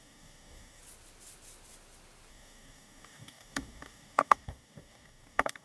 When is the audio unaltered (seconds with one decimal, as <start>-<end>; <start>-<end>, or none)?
0.8-2.3